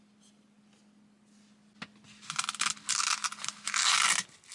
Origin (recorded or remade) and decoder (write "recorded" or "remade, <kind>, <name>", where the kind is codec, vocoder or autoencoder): recorded